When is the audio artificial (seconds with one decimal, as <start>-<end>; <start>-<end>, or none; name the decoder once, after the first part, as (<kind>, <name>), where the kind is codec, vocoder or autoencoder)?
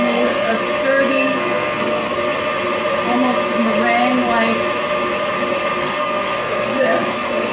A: 0.0-0.5 (codec, SNAC); 1.1-2.2; 5.8-7.5